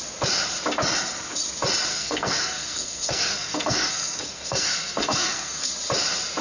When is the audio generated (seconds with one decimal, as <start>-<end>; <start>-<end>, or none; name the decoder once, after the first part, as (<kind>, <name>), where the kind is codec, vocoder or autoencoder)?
1.9-5.7 (codec, SNAC)